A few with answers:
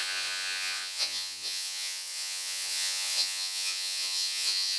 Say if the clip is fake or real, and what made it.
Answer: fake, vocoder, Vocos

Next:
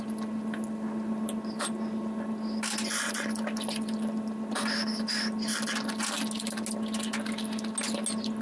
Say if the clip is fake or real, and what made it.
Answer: real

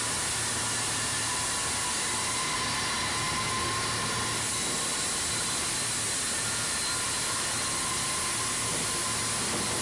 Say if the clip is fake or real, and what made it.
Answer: real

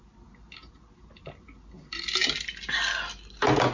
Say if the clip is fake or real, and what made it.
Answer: real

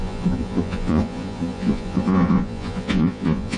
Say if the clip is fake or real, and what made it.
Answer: fake, vocoder, Vocos